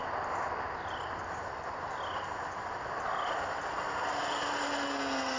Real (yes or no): yes